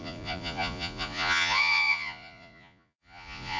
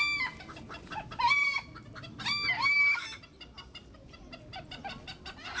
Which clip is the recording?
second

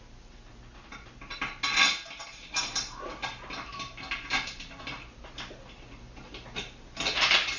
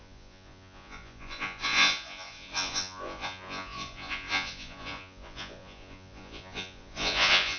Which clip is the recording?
first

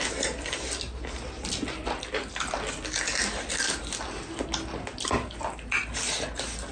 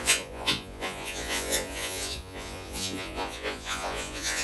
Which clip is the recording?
first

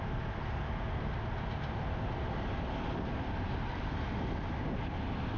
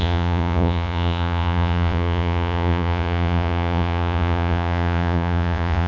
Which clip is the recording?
first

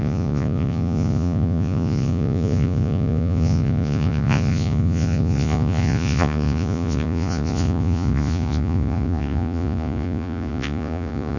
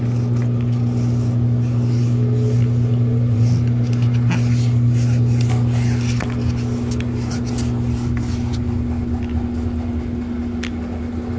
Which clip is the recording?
second